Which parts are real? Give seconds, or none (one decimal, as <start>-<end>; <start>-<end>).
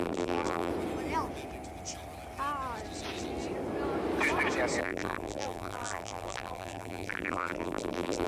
0.7-4.8